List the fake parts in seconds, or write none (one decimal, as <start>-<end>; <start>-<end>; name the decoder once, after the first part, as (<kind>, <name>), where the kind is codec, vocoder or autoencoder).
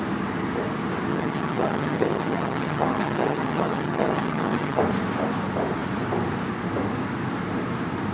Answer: 1.1-4.8 (vocoder, HiFi-GAN)